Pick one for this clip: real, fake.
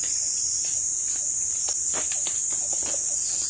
real